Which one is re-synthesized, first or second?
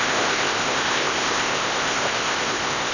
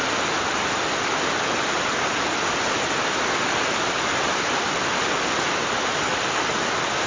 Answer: first